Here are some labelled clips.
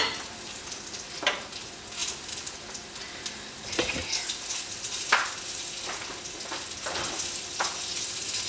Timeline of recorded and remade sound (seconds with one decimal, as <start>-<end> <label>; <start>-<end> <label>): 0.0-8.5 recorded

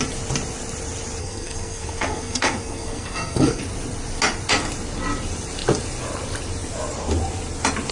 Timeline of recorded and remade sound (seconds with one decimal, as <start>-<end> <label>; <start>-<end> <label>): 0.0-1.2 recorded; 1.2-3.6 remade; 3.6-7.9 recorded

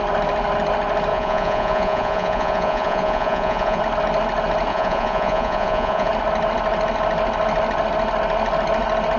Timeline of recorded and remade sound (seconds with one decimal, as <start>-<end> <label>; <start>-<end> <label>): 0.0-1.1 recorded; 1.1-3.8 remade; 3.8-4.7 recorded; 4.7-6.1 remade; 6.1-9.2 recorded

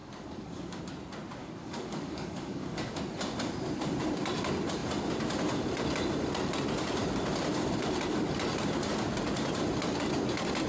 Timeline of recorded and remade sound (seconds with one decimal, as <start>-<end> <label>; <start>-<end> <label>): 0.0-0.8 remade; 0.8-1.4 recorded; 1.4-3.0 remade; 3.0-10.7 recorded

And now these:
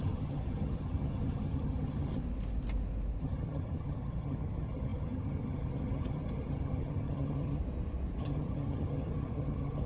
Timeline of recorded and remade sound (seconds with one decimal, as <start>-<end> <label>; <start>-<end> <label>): 0.0-2.2 remade; 2.2-3.2 recorded; 3.2-7.6 remade; 7.6-8.2 recorded; 8.2-9.9 remade